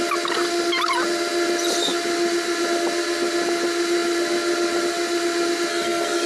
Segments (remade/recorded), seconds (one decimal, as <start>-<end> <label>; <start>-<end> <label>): 0.0-5.7 recorded; 5.7-6.3 remade